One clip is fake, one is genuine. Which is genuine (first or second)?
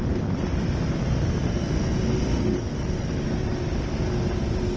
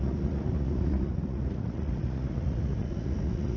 first